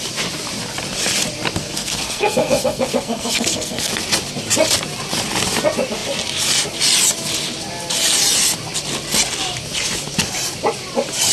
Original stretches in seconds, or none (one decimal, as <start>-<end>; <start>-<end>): 0.0-1.6; 3.9-11.3